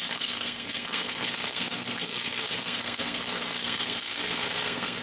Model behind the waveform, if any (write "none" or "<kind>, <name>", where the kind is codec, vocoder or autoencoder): codec, SNAC